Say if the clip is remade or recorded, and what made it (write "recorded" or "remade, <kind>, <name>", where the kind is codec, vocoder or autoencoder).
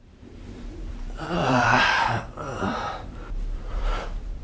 remade, vocoder, BigVGAN v2